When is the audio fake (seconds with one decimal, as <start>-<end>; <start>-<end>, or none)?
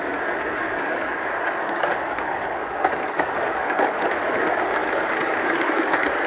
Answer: 0.0-6.3